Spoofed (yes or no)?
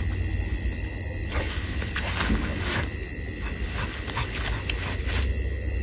no